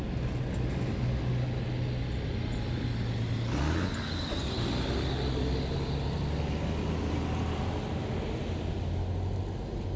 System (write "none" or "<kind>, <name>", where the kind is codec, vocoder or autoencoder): none